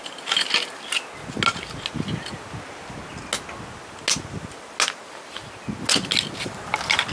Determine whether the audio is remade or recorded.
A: recorded